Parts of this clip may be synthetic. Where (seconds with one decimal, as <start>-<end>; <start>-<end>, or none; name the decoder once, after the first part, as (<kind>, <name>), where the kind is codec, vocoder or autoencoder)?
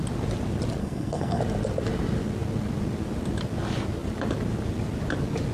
0.8-1.4 (codec, SNAC)